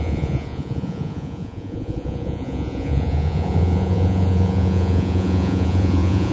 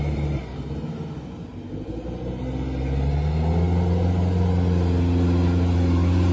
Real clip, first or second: second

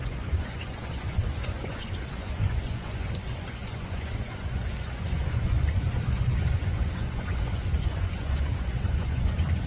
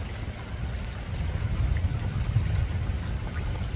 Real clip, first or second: second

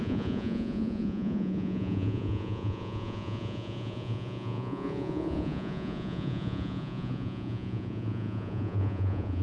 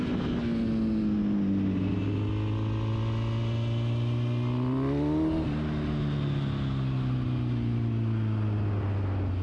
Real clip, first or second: second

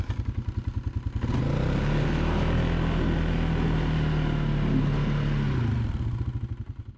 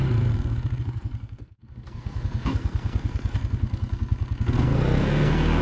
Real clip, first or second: first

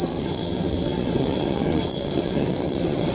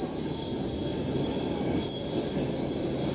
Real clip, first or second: second